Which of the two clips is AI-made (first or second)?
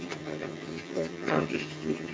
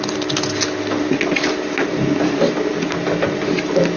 first